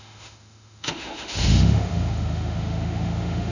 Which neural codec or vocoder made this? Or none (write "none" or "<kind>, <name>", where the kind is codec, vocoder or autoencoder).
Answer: autoencoder, DAC-VAE